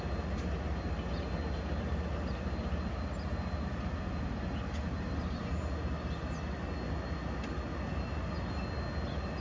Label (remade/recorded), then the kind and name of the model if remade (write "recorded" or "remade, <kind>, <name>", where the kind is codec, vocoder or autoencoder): recorded